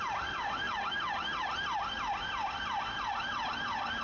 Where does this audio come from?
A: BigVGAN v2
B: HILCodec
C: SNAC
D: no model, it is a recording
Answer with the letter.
D